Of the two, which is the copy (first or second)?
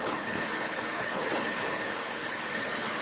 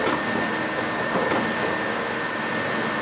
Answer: first